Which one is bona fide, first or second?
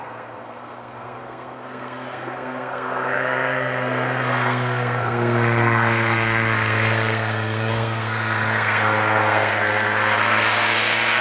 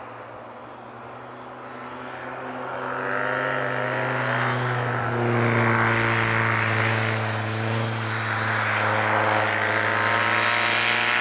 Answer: second